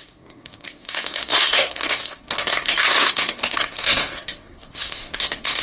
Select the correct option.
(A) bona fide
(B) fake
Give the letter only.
B